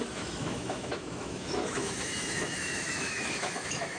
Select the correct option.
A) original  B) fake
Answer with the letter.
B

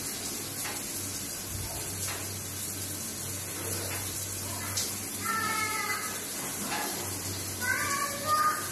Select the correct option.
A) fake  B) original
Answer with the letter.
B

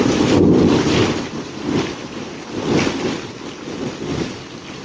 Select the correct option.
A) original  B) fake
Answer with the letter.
B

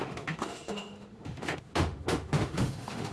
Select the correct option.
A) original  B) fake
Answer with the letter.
B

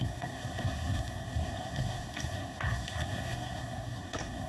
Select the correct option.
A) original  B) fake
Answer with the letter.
B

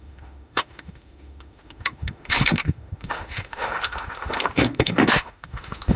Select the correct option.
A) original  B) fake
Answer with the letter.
B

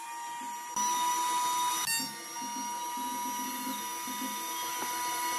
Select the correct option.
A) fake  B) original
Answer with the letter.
B